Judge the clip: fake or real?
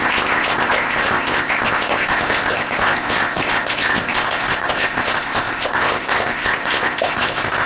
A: fake